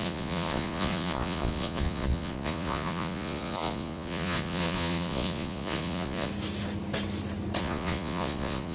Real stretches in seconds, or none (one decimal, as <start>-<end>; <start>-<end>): 6.3-7.6